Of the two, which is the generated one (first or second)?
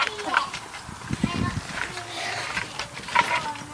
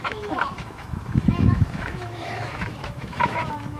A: second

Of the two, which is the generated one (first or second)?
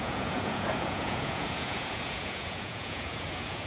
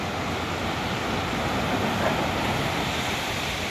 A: first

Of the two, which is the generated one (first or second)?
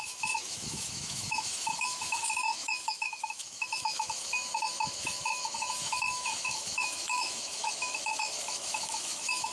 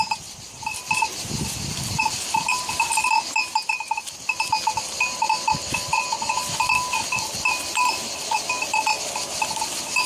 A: first